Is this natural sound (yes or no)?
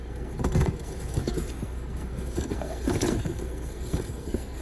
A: no